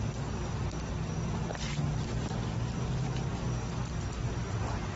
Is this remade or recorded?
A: recorded